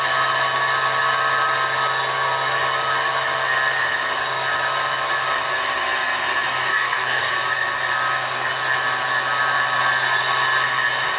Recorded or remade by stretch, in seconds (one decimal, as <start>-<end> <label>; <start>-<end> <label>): 0.0-6.7 recorded; 6.7-7.3 remade; 7.3-11.2 recorded